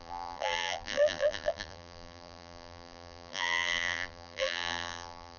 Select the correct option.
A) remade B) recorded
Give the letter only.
A